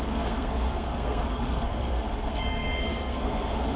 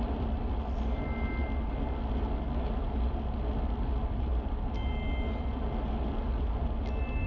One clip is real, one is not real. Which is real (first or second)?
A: second